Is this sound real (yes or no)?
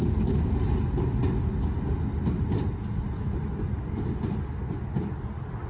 yes